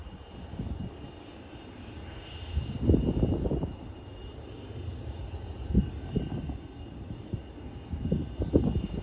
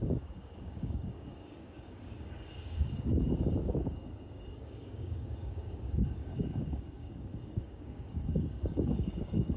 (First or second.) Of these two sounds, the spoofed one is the second